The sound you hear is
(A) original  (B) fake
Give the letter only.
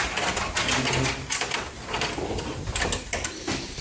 A